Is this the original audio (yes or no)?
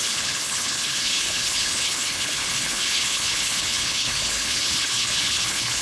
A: no